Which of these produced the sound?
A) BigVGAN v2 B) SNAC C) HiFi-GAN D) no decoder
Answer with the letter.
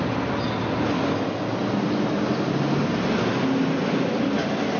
D